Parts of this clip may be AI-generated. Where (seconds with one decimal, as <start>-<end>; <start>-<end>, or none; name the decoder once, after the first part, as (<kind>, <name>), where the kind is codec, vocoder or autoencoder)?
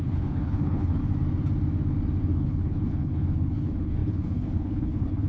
0.0-1.0 (codec, HILCodec); 2.2-5.3